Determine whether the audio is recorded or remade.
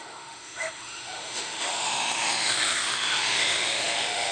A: remade